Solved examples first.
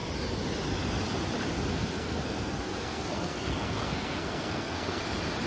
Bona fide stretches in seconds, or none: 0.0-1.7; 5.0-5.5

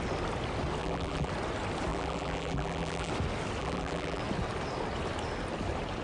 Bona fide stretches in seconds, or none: 0.0-0.8; 1.3-1.9; 3.1-3.6; 4.2-6.0

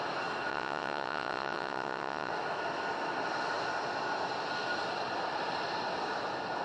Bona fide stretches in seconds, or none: 0.0-0.5; 2.3-6.6

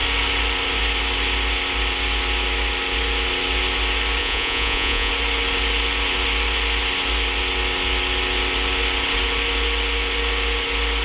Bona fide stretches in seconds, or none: 0.0-4.2; 5.1-11.0

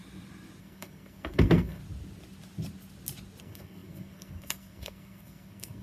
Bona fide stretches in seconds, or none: 0.0-0.6; 1.8-3.4

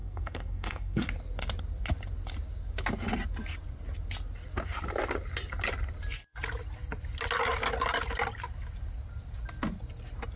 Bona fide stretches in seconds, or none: 1.0-10.4

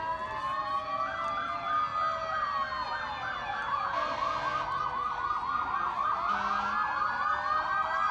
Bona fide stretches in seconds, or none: 0.0-8.1

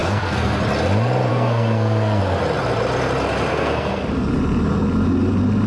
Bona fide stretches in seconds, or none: 0.6-1.3; 2.2-3.5; 4.0-5.7